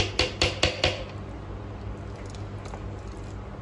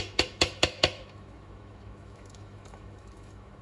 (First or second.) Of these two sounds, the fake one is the second